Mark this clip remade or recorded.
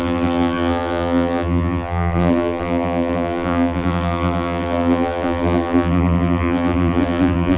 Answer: remade